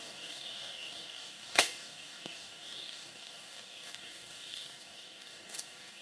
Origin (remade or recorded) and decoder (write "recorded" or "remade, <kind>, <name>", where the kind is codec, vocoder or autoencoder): remade, codec, DAC